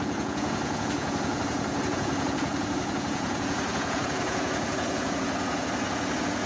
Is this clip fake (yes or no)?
yes